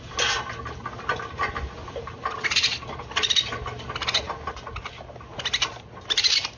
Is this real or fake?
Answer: real